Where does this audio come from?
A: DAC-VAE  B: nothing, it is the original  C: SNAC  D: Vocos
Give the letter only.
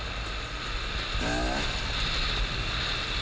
B